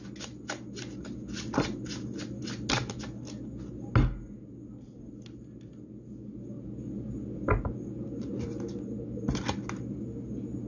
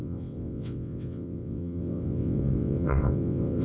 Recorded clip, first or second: first